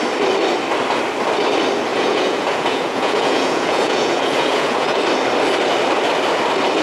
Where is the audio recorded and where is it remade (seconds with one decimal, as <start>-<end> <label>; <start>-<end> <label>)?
0.0-1.9 recorded; 1.9-5.0 remade; 5.0-6.8 recorded